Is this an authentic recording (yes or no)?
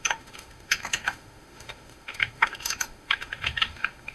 no